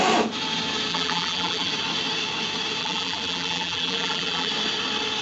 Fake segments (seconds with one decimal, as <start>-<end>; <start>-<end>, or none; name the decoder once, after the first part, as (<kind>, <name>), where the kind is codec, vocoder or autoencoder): 0.9-1.7 (vocoder, BigVGAN v2); 2.8-4.5